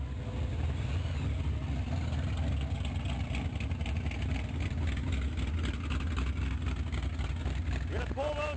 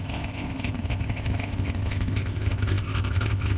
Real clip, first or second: first